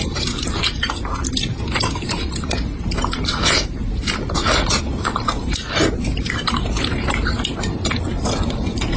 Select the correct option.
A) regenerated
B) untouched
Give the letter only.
A